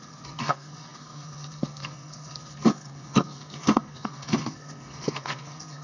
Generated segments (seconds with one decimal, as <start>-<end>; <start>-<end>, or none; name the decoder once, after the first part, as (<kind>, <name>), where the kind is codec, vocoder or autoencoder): 0.0-5.8 (codec, SNAC)